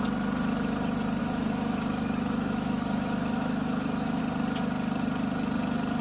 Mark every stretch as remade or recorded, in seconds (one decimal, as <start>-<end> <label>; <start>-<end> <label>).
0.0-1.2 recorded; 1.2-4.2 remade; 4.2-6.0 recorded